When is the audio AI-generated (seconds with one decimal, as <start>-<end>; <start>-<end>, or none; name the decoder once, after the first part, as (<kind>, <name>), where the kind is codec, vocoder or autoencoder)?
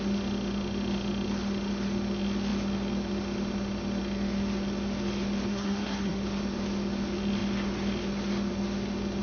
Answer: 5.5-6.2 (codec, SNAC)